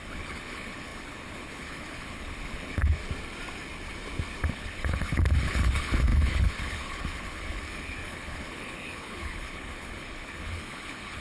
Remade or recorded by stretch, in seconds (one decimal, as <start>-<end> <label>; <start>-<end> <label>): 0.0-3.0 remade; 3.0-4.5 recorded; 4.5-11.2 remade